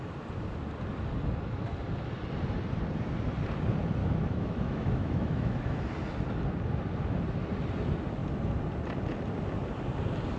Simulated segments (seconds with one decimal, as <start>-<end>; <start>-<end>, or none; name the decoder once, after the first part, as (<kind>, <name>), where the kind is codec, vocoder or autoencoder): 4.0-5.8 (autoencoder, DAC-VAE)